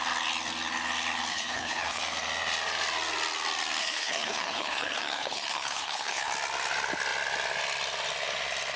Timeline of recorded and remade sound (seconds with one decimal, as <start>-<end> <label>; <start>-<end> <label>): 0.0-1.3 recorded; 1.3-2.0 remade; 2.0-3.8 recorded; 3.8-6.3 remade; 6.3-8.8 recorded